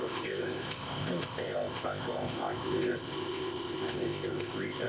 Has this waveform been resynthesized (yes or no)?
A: yes